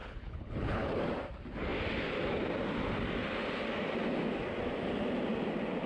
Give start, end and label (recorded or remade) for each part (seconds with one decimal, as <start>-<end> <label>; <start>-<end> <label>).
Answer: 0.0-1.0 remade; 1.0-5.9 recorded